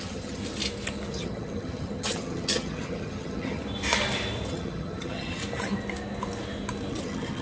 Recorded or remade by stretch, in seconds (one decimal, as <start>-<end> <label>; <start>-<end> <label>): 0.0-0.4 remade; 0.4-1.1 recorded; 1.1-3.6 remade; 3.6-4.5 recorded; 4.5-5.4 remade; 5.4-6.9 recorded; 6.9-7.4 remade